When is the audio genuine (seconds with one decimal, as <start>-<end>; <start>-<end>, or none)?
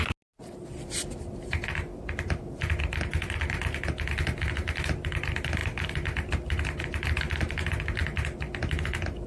0.0-9.3